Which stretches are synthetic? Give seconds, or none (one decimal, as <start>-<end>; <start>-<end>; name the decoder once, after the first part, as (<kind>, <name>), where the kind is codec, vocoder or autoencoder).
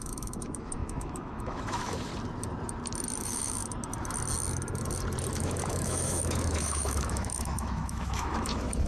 0.0-2.1 (autoencoder, DAC-VAE); 3.2-3.6; 5.3-8.9